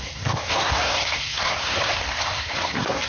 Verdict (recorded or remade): remade